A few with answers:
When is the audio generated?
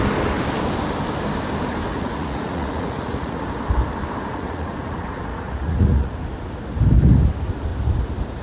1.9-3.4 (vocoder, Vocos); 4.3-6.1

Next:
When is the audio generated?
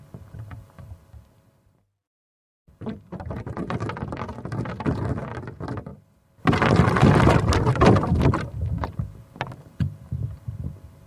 none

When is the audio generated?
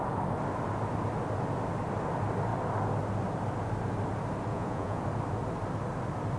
4.5-5.0 (vocoder, Vocos)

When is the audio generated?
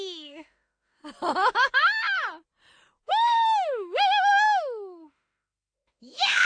0.0-1.0 (autoencoder, DAC-VAE); 3.1-6.4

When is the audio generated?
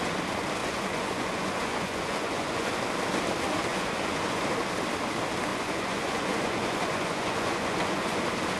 0.6-2.7 (vocoder, Vocos); 3.7-4.5; 5.5-8.2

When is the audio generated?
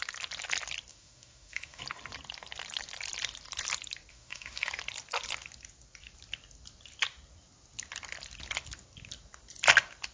0.9-1.8 (autoencoder, DAC-VAE); 4.1-4.7